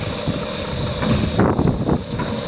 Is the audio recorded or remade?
recorded